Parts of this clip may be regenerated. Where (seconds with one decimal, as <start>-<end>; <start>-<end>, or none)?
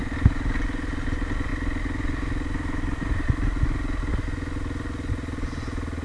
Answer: none